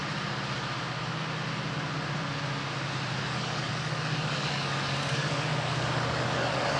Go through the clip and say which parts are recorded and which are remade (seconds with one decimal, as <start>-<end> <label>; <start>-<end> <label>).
0.0-3.2 recorded; 3.2-6.8 remade